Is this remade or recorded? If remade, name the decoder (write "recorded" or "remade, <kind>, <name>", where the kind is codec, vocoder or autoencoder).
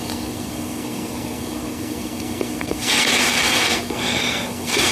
remade, codec, SNAC